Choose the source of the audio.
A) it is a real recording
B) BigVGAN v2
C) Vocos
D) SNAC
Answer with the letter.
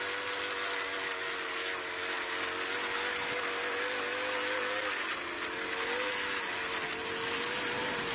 A